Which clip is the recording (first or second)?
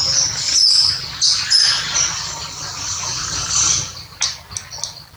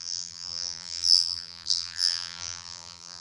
first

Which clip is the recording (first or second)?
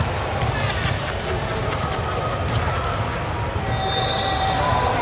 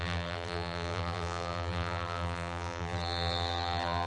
first